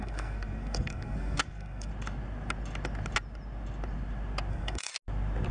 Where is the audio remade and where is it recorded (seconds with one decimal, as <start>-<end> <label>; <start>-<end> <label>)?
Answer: 0.0-1.9 remade; 1.9-4.5 recorded; 4.5-4.9 remade; 4.9-5.5 recorded